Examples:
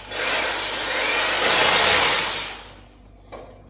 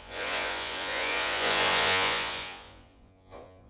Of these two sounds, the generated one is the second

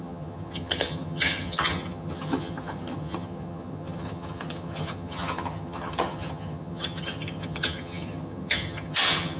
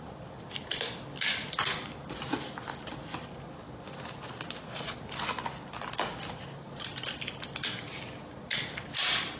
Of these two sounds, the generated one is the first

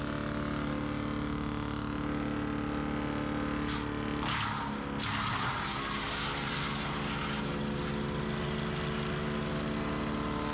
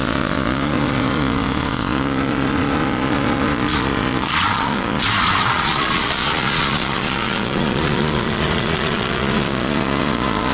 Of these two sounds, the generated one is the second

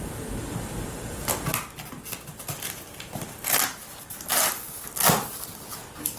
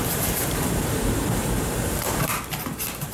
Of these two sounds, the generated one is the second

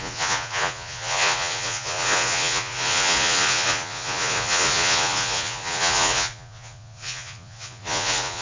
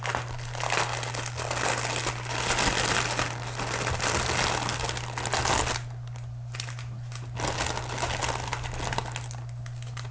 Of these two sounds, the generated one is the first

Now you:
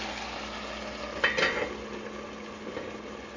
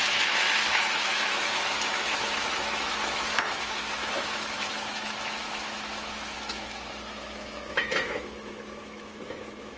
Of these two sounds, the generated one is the second